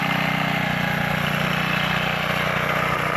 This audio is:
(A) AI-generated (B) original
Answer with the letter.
B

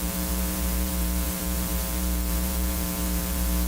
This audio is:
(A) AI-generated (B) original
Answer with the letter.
A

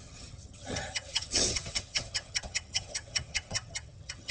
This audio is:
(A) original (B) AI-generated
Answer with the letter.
B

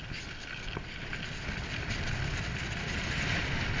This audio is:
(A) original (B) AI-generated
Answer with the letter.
A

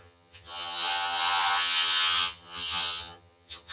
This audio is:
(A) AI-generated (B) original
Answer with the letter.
A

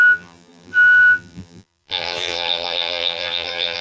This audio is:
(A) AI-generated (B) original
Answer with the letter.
A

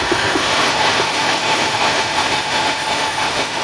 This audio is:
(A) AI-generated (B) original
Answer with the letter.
A